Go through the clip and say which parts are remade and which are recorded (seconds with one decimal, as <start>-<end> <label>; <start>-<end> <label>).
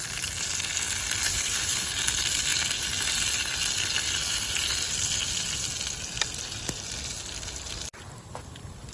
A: 0.0-1.3 recorded; 1.3-1.9 remade; 1.9-8.9 recorded